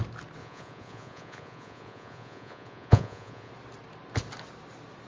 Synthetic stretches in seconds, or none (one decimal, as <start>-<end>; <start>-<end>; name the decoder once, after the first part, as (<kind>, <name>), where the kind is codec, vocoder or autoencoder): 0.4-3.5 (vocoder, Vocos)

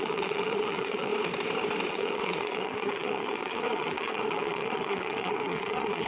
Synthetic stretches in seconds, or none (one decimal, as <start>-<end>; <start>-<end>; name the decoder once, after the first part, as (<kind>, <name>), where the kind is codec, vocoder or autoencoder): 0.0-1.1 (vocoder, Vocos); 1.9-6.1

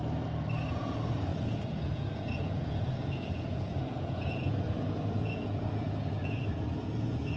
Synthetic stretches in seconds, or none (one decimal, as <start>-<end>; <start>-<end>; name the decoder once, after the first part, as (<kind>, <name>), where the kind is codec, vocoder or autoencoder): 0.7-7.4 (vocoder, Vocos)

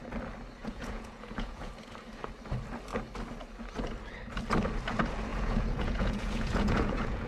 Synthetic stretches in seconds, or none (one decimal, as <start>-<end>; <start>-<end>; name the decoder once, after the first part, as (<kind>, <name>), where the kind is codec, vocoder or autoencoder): 0.6-1.7 (vocoder, Vocos); 5.3-7.3

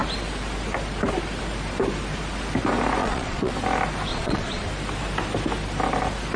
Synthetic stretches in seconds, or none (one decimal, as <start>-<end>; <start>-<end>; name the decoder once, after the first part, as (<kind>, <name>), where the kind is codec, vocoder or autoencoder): 3.0-3.5 (vocoder, Vocos); 4.1-4.7